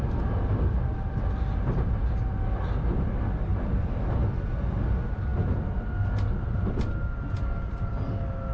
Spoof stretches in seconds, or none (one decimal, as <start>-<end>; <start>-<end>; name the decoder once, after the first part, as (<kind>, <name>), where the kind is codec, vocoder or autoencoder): 3.5-4.0 (vocoder, BigVGAN v2)